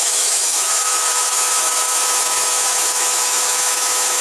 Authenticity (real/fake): fake